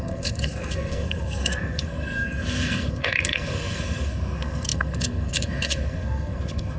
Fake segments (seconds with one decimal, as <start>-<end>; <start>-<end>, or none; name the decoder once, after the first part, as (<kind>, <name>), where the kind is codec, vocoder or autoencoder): 0.0-6.8 (codec, SNAC)